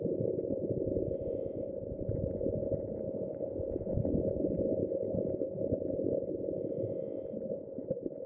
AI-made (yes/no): yes